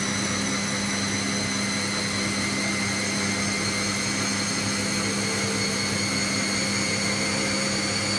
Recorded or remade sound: recorded